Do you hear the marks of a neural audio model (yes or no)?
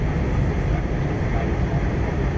no